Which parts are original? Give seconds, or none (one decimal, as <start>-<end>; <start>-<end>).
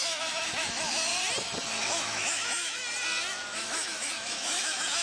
1.1-1.8; 2.8-3.5